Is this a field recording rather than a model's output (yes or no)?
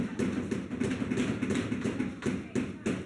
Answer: yes